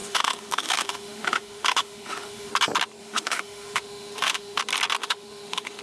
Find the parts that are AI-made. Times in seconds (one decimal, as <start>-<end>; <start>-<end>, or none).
0.0-2.5; 3.0-4.6; 5.0-5.8